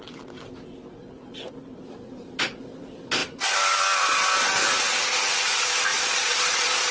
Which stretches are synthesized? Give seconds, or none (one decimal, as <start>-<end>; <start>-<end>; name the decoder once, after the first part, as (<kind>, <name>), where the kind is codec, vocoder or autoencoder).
5.9-6.9 (vocoder, Vocos)